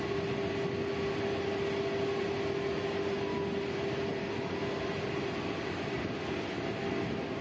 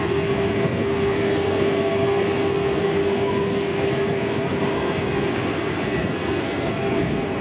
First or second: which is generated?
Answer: second